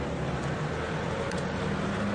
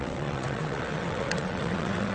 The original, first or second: first